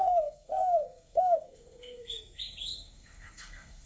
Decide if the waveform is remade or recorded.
remade